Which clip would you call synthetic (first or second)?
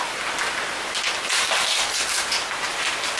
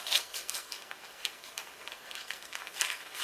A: second